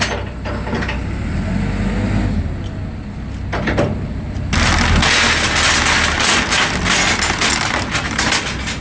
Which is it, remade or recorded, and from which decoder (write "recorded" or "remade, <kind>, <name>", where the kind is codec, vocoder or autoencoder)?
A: recorded